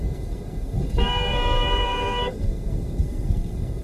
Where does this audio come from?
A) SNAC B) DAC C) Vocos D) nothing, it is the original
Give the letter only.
A